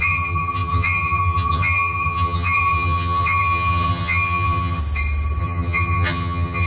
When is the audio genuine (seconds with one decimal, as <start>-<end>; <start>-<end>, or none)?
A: 4.8-5.4